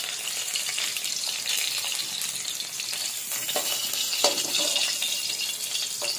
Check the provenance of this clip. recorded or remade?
remade